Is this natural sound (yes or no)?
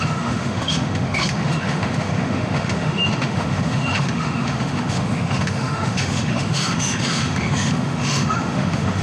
no